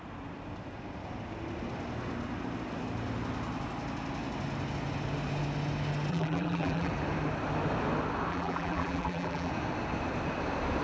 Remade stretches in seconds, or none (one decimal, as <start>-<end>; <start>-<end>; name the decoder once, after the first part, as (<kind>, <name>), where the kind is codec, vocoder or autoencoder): 6.1-6.9 (vocoder, BigVGAN v2); 8.3-9.5